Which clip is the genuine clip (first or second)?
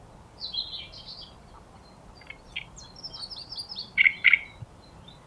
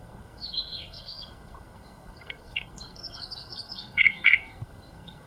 first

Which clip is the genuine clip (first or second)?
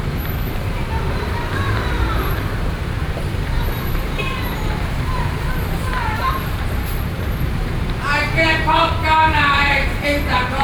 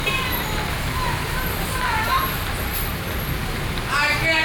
second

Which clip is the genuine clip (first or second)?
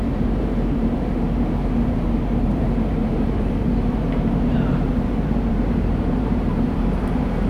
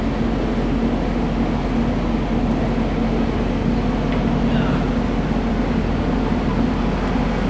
second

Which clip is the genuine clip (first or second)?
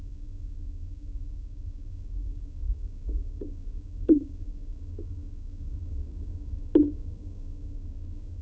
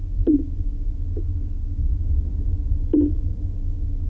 second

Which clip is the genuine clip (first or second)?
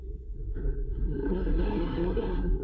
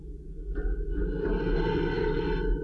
second